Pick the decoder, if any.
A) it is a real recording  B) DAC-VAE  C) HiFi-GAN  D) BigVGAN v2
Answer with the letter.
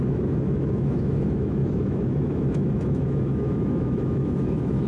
B